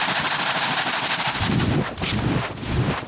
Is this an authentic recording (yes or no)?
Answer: yes